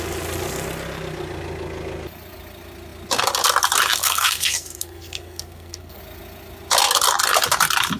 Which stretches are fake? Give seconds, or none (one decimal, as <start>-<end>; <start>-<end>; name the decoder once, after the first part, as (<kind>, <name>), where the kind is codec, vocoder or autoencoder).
4.0-6.0 (codec, SNAC)